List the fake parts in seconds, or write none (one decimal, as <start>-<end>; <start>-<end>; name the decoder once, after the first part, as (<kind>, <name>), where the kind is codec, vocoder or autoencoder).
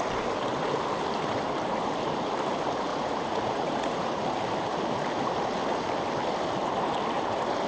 2.9-4.2 (vocoder, Vocos)